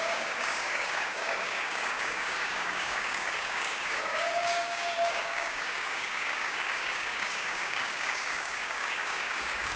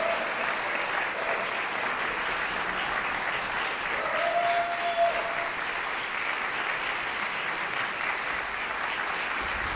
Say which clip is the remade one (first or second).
first